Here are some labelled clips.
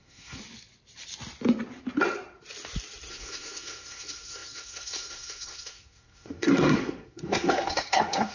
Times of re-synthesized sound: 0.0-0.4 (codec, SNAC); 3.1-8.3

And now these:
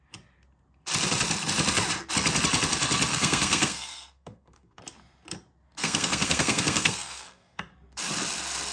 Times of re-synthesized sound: 3.1-4.8 (codec, SNAC); 5.8-7.6

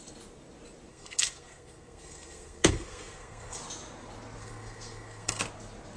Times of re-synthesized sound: 0.9-3.6 (codec, SNAC); 4.4-5.4